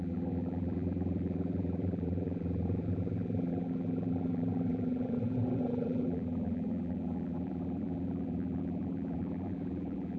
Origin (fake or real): fake